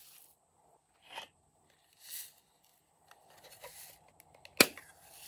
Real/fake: real